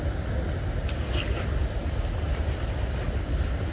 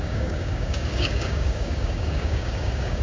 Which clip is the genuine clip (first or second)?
first